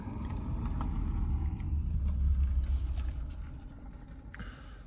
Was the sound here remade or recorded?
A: recorded